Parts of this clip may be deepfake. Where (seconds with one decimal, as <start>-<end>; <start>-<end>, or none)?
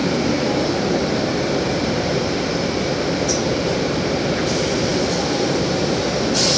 0.0-4.0